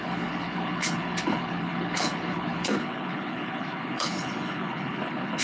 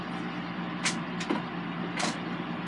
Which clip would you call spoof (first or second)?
first